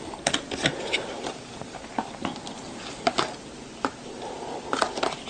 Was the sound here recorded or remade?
recorded